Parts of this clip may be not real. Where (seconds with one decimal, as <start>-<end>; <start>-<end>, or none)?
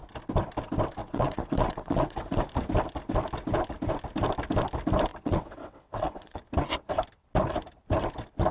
1.0-2.4; 5.1-6.4